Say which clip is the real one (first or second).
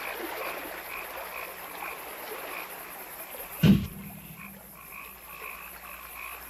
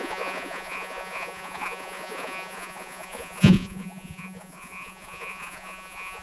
first